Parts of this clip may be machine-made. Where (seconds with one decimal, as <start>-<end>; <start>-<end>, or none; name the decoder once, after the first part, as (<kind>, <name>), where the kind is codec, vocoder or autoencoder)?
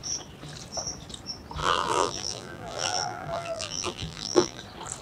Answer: 1.6-4.6 (vocoder, BigVGAN v2)